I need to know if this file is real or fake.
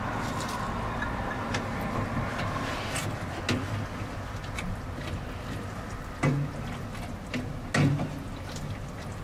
real